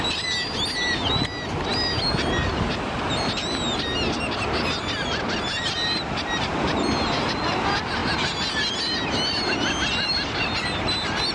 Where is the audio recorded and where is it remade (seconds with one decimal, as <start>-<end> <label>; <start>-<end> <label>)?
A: 0.0-1.7 recorded; 1.7-2.7 remade; 2.7-11.3 recorded